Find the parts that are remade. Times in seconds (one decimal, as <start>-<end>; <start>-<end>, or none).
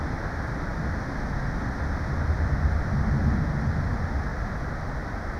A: none